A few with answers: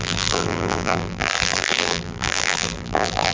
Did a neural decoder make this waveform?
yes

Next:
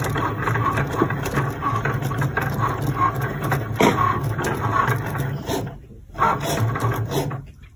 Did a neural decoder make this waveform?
no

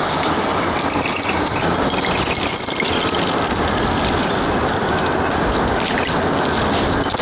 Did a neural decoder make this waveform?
no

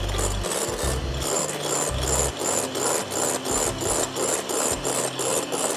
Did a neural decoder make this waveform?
no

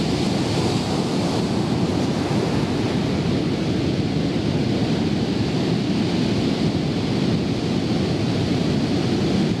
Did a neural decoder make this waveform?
no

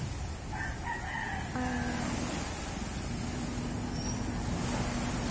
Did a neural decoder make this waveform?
no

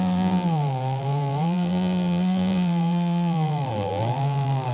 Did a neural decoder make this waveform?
yes